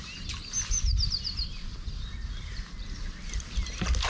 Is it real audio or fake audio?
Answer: real